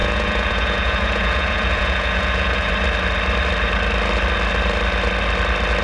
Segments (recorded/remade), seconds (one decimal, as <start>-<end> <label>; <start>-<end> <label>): 0.0-2.7 remade; 2.7-5.8 recorded